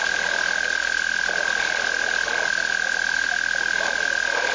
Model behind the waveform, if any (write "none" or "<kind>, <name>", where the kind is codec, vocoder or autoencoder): none